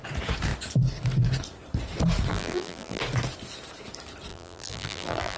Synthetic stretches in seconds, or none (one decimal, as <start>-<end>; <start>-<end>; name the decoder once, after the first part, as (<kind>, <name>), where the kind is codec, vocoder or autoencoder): 2.3-3.0 (vocoder, BigVGAN v2); 4.3-5.4